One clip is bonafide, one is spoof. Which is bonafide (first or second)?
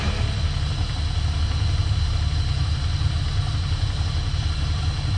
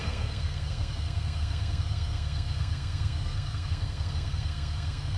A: first